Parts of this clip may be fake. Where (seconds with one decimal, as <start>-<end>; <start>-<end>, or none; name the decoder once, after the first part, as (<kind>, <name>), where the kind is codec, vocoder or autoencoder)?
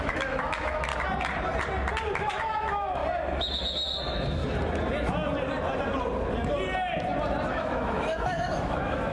0.0-0.9 (autoencoder, DAC-VAE); 2.2-3.0; 4.0-4.4; 7.5-9.1